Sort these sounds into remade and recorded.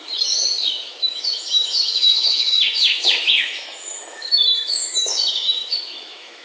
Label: remade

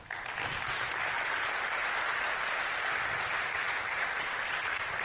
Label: recorded